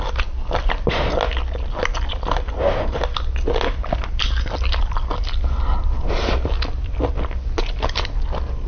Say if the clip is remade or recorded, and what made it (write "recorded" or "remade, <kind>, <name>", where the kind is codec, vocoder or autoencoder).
recorded